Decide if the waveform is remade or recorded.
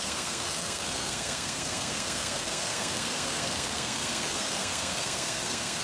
remade